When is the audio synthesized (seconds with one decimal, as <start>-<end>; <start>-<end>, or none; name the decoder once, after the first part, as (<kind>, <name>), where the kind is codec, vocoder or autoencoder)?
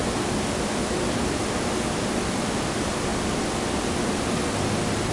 none